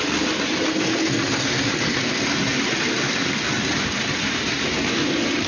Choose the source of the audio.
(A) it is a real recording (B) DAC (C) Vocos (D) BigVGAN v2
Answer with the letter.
A